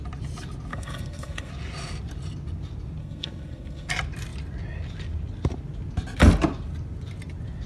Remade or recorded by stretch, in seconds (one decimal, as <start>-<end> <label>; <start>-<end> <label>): 0.0-0.7 recorded; 0.7-1.5 remade; 1.5-3.0 recorded; 3.0-3.9 remade; 3.9-7.7 recorded